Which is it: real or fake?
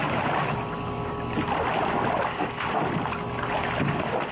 real